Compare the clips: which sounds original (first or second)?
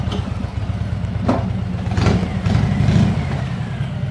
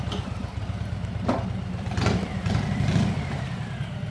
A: first